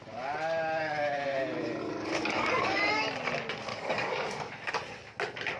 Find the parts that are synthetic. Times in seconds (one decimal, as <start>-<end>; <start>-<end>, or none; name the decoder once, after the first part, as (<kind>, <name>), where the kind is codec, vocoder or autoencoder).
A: 1.8-2.9 (codec, DAC); 3.7-4.7